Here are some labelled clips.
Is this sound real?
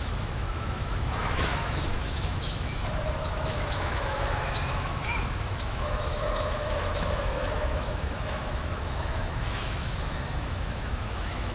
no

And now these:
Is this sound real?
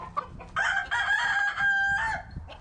yes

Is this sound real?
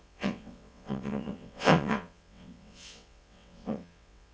no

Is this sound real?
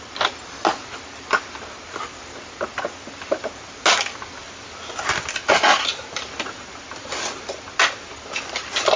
yes